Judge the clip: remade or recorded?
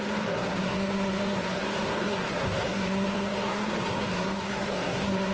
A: remade